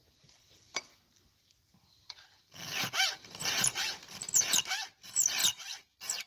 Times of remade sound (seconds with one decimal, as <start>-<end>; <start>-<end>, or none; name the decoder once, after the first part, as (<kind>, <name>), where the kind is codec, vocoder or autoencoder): none